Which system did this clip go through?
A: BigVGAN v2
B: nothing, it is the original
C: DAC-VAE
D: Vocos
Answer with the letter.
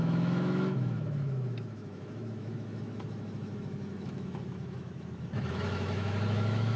C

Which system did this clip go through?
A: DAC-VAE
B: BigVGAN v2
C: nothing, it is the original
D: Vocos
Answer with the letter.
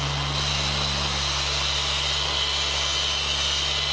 C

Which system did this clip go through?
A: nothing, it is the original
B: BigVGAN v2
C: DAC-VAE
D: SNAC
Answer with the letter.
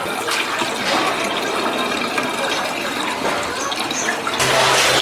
A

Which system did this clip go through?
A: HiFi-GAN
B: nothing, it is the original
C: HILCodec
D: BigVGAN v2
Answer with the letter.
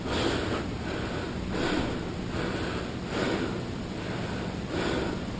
B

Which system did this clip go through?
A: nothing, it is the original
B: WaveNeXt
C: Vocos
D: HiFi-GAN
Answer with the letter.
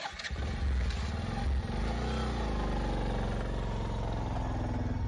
A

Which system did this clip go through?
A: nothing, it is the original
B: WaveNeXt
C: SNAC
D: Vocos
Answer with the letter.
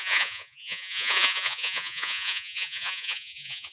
D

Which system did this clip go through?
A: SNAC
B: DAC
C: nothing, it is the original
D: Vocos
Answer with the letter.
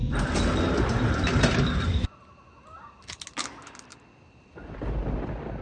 C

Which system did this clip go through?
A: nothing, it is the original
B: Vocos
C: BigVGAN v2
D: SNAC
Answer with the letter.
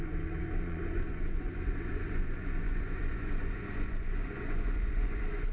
B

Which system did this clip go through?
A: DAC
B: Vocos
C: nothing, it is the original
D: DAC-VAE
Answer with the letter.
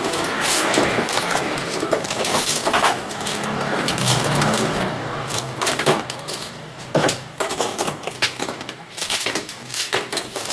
A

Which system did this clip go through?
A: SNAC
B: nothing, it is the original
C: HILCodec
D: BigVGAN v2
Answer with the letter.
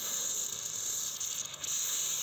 B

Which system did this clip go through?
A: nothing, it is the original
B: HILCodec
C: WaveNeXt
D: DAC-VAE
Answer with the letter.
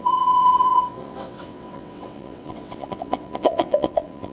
C